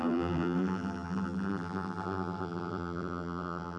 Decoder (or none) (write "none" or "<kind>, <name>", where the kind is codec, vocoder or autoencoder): vocoder, BigVGAN v2